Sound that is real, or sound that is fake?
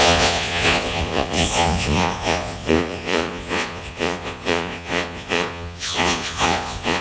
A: fake